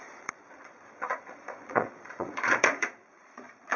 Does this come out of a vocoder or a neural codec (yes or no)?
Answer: yes